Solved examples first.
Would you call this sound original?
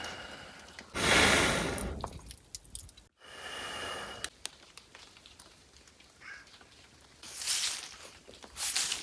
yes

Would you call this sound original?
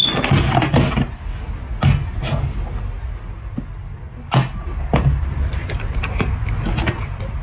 yes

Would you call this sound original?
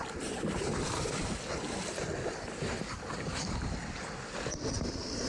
yes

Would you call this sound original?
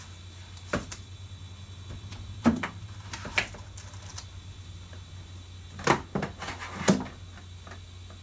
yes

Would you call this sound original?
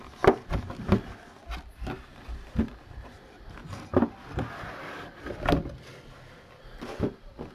yes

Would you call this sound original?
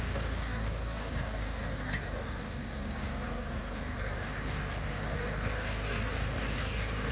no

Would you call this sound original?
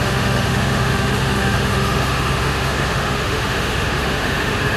no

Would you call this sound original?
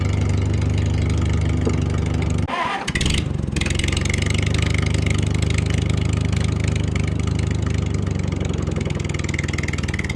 yes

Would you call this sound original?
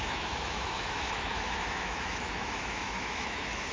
no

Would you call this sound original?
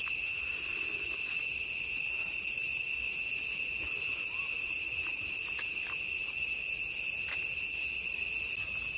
yes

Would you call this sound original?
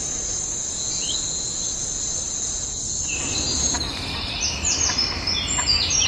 yes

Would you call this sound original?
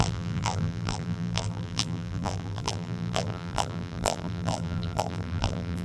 no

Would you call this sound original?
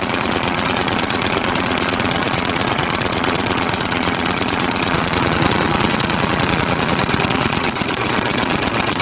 no